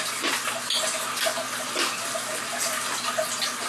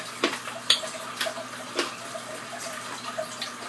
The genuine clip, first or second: first